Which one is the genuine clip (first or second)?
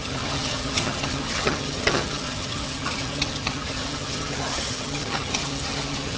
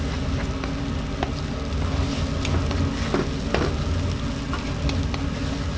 second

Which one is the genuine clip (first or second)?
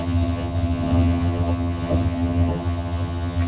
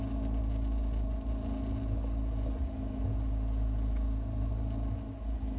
second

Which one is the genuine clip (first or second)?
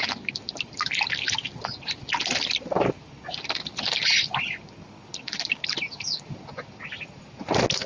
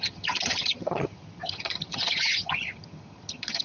first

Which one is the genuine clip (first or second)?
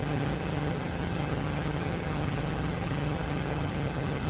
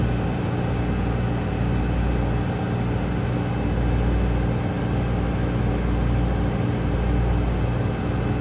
second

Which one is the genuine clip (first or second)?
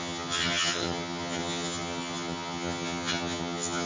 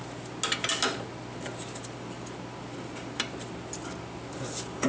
second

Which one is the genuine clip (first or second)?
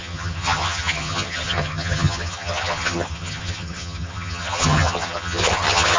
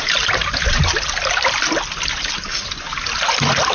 second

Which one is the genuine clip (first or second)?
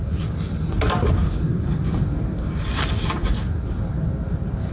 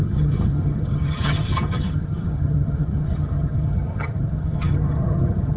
first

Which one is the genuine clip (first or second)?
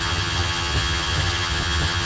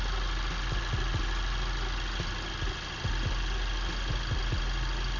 second